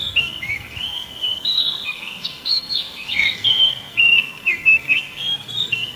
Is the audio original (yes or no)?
no